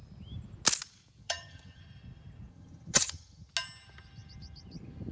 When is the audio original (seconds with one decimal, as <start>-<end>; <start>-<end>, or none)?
0.0-1.2; 1.8-2.5; 3.5-5.1